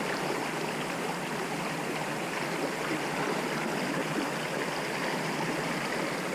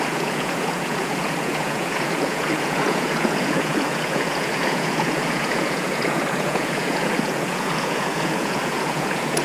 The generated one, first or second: second